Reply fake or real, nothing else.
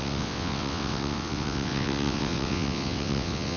fake